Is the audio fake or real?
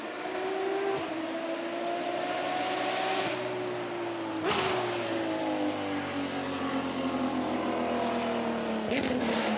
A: real